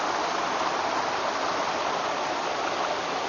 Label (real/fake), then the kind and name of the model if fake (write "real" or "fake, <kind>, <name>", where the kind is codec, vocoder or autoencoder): real